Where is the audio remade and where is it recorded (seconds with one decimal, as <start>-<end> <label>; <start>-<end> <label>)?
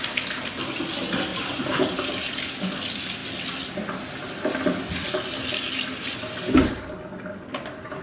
0.0-1.3 recorded; 1.3-2.3 remade; 2.3-8.0 recorded